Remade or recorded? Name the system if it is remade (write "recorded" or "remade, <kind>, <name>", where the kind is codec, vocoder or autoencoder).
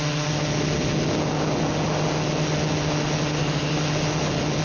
recorded